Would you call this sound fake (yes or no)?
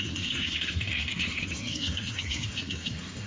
yes